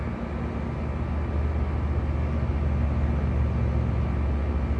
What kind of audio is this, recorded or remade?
recorded